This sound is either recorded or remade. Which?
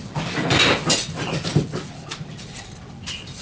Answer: recorded